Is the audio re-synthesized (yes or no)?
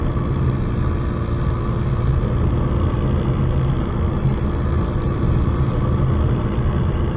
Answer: no